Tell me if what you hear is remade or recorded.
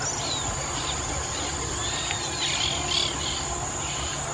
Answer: recorded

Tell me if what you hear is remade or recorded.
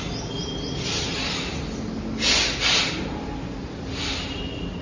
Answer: recorded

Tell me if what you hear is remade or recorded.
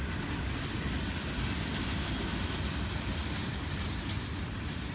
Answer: remade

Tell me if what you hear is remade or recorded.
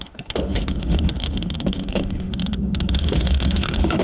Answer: remade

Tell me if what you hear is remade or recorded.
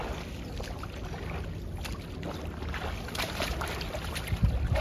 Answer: recorded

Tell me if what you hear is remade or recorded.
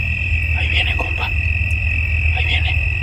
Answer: recorded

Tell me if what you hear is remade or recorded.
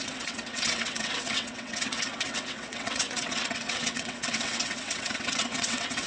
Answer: remade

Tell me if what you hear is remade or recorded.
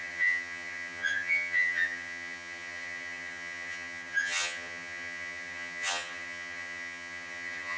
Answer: remade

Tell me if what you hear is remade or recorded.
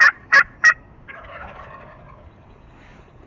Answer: remade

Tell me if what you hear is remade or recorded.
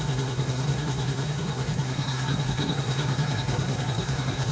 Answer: remade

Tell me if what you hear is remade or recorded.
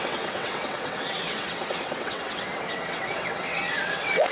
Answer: remade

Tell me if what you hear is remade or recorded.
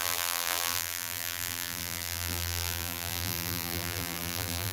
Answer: remade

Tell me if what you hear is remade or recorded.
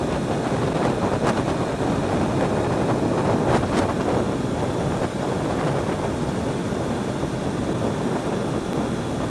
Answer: recorded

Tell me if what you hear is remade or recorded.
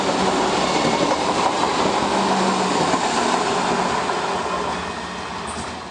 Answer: recorded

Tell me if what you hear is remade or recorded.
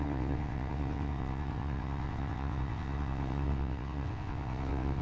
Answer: remade